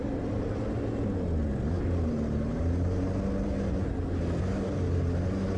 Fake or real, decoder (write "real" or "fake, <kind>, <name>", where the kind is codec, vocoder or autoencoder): real